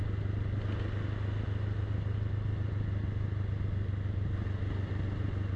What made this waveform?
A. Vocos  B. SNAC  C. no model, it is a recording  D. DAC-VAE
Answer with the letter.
C